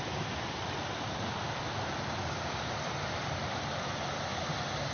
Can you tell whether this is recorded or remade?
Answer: recorded